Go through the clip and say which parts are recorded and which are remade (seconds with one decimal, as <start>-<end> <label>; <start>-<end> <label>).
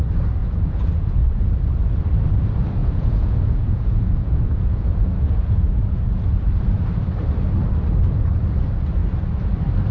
0.0-0.4 recorded; 0.4-1.5 remade; 1.5-2.8 recorded; 2.8-6.1 remade; 6.1-9.9 recorded